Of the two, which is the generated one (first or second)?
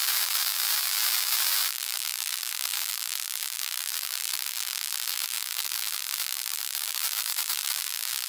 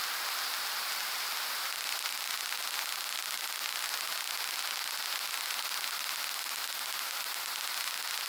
first